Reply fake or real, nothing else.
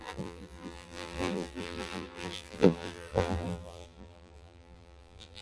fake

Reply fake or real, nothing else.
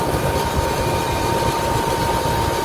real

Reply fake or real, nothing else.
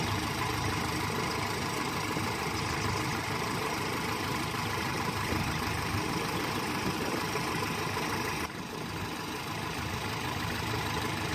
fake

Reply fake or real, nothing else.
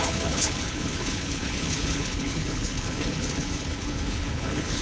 fake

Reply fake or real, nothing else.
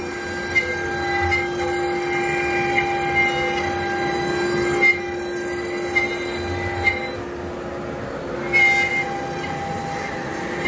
real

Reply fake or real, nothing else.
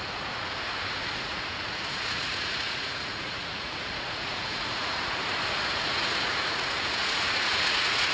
fake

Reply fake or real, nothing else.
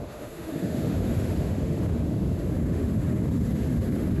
fake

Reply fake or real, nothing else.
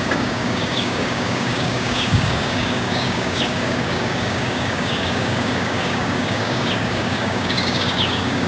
fake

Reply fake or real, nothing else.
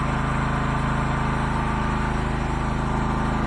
real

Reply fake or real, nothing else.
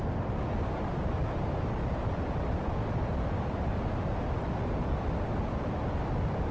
fake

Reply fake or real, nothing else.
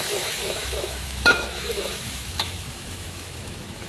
fake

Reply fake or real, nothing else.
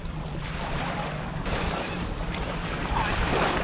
real